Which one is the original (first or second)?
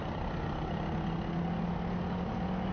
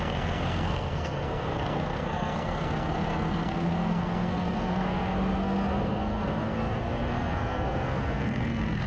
first